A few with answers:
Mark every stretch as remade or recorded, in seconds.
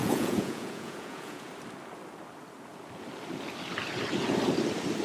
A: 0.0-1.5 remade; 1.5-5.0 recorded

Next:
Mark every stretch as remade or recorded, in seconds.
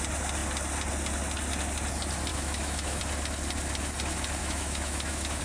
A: 0.0-2.3 recorded; 2.3-3.0 remade; 3.0-4.4 recorded; 4.4-5.4 remade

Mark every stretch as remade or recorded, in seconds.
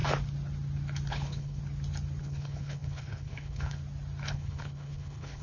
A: 0.0-1.1 recorded; 1.1-1.6 remade; 1.6-2.2 recorded; 2.2-3.8 remade; 3.8-4.3 recorded; 4.3-5.4 remade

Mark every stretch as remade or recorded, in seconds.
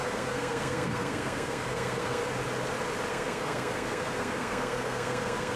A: 0.0-2.2 remade; 2.2-3.1 recorded; 3.1-5.6 remade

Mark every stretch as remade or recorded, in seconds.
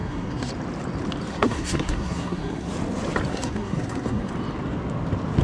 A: 0.0-0.5 remade; 0.5-1.3 recorded; 1.3-2.7 remade; 2.7-3.3 recorded; 3.3-4.3 remade; 4.3-5.4 recorded